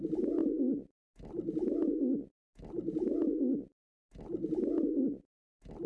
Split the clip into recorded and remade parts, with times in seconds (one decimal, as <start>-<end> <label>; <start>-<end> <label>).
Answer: 0.0-5.9 recorded